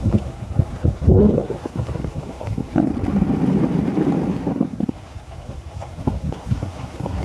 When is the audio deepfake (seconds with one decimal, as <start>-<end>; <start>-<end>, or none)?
0.0-2.9; 4.3-7.2